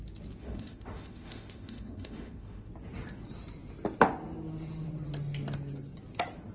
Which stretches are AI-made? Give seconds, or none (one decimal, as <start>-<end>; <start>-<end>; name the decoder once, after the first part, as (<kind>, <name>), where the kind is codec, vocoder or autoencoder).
0.4-2.7 (autoencoder, DAC-VAE)